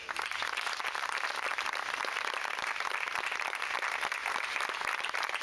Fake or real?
fake